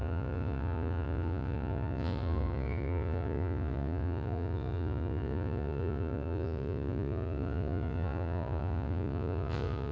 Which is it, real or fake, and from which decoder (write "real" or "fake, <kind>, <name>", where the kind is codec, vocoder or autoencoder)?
fake, vocoder, Vocos